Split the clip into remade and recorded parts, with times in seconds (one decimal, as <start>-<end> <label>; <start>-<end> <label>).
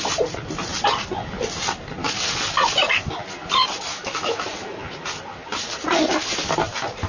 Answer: 0.0-3.9 recorded; 3.9-4.4 remade; 4.4-7.1 recorded